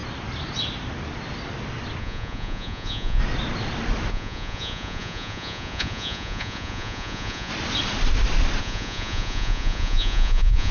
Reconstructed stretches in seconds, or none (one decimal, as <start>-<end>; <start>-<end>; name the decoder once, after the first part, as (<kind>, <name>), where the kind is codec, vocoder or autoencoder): 2.0-3.2 (vocoder, Vocos); 4.1-7.5; 8.6-10.7